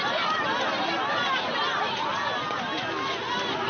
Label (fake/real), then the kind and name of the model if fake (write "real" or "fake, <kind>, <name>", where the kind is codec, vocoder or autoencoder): real